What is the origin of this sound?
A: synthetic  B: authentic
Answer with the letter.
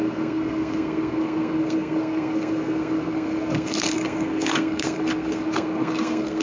A